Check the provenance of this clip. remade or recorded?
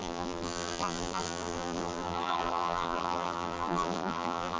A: remade